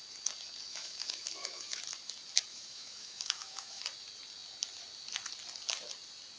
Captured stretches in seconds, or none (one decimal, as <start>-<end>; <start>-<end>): 0.0-0.7; 1.8-2.5; 3.8-6.4